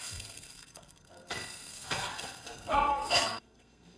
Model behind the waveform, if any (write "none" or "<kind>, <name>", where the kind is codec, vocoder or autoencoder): codec, SNAC